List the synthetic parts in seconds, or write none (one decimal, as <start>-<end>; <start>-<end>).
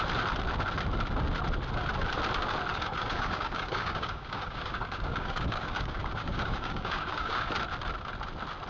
2.7-7.5